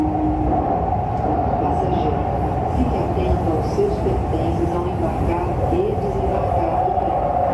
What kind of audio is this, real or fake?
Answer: real